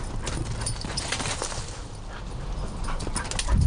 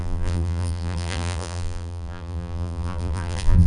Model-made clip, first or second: second